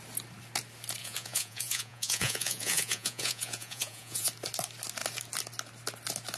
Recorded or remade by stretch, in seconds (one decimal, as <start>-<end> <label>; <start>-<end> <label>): 0.0-1.0 recorded; 1.0-4.3 remade; 4.3-6.4 recorded

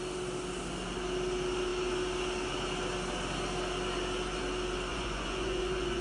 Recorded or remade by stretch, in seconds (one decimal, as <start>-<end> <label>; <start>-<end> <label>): 0.0-4.9 recorded; 4.9-6.0 remade

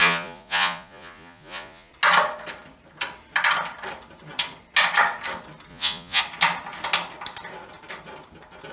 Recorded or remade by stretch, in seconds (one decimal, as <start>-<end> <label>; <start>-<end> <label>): 0.0-1.9 remade; 1.9-5.7 recorded; 5.7-6.2 remade; 6.2-8.7 recorded

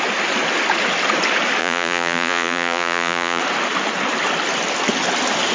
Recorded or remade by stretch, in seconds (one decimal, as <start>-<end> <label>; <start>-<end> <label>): 0.0-1.6 recorded; 1.6-3.4 remade; 3.4-5.5 recorded

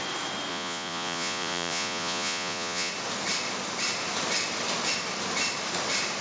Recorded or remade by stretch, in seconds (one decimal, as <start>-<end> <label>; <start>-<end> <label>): 0.0-0.5 recorded; 0.5-2.9 remade; 2.9-6.2 recorded

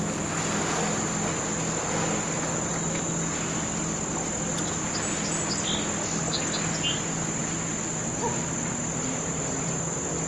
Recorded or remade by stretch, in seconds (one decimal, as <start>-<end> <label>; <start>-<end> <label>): 0.0-10.3 recorded